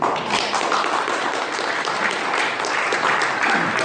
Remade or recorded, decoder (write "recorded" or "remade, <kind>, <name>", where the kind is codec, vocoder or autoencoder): recorded